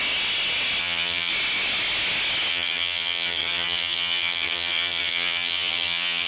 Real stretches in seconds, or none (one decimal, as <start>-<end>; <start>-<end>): 0.0-0.8; 1.3-2.5